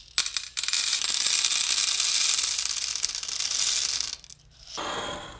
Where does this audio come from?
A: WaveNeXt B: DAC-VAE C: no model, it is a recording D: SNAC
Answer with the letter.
C